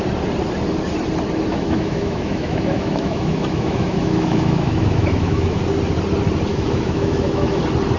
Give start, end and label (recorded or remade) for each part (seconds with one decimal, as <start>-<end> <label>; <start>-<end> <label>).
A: 0.0-1.5 recorded; 1.5-5.6 remade; 5.6-6.5 recorded; 6.5-7.6 remade; 7.6-8.0 recorded